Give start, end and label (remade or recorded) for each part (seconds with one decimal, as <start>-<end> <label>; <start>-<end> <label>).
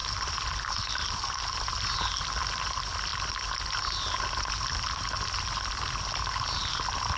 0.0-7.2 recorded